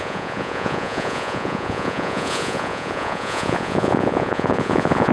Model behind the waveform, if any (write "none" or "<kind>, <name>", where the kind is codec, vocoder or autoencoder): vocoder, Vocos